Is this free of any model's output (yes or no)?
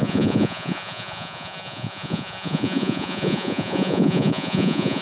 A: no